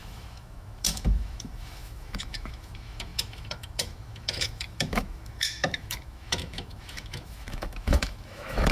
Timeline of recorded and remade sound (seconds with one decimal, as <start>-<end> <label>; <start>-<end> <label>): 0.0-8.7 remade